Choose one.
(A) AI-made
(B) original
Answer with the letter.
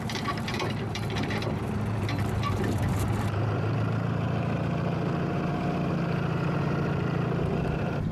A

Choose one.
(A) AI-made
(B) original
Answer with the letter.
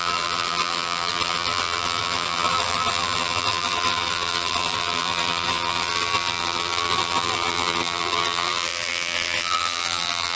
A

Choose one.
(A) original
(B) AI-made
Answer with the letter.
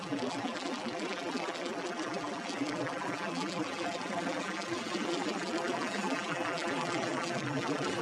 B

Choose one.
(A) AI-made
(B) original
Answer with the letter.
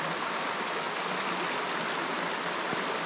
B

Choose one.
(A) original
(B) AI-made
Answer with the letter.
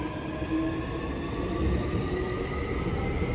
A